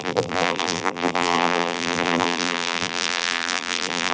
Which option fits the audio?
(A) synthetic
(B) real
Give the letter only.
A